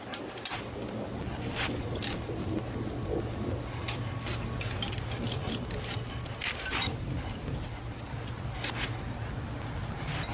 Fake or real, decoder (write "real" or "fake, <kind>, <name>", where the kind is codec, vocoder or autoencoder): real